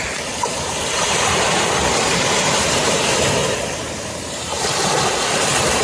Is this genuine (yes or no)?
no